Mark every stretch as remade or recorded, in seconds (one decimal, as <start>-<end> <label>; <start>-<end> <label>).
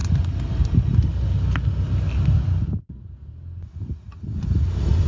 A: 0.0-5.1 recorded